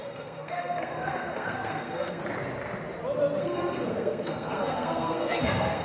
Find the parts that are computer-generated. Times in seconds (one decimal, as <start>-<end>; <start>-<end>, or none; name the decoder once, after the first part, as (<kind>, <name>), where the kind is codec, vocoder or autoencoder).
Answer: 0.0-2.2 (codec, SNAC); 3.4-5.8